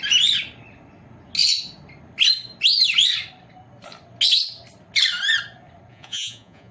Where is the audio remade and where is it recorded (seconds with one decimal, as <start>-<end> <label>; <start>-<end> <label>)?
0.0-5.9 recorded; 5.9-6.7 remade